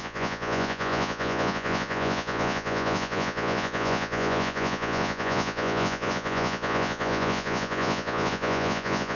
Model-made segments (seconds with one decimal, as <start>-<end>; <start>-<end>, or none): 0.0-9.2